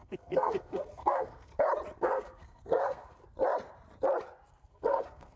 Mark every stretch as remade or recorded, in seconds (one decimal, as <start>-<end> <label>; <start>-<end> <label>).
0.0-1.5 remade; 1.5-2.0 recorded; 2.0-3.2 remade; 3.2-4.5 recorded; 4.5-5.4 remade